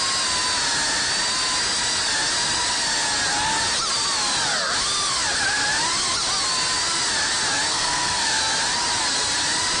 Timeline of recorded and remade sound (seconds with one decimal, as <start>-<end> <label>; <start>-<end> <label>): 0.0-7.7 recorded; 7.7-8.4 remade; 8.4-9.8 recorded